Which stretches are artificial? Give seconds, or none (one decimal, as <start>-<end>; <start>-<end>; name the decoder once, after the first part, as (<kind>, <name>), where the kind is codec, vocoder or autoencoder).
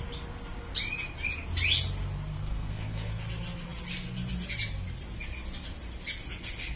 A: 2.3-3.2 (codec, SNAC)